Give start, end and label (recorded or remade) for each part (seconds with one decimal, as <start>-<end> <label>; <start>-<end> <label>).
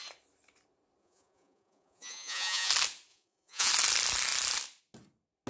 0.0-1.0 recorded; 1.0-2.7 remade; 2.7-3.1 recorded; 3.1-3.7 remade; 3.7-5.5 recorded